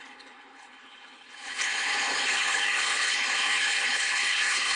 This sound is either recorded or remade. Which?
remade